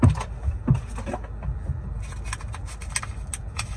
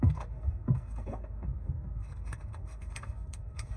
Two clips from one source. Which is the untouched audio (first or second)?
first